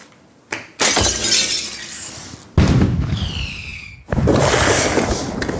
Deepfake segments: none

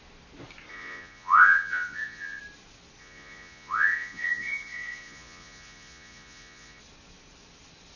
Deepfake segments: 0.7-2.4 (vocoder, Vocos); 3.0-6.8

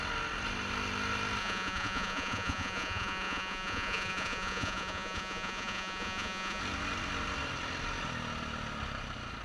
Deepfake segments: 1.4-6.6 (vocoder, Vocos)

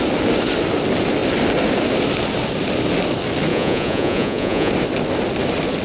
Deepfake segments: 3.5-4.7 (vocoder, Vocos)

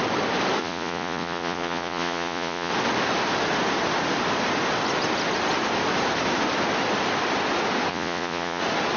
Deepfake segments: 0.6-2.7 (vocoder, Vocos); 7.9-8.6

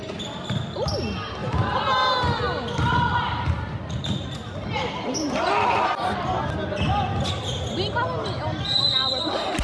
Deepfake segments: none